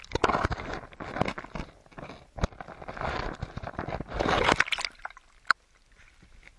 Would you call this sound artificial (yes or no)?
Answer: no